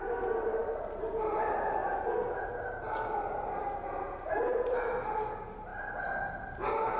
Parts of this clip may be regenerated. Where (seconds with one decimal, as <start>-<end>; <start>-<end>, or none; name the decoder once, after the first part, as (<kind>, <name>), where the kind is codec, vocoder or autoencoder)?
0.6-1.2 (vocoder, BigVGAN v2); 4.5-5.0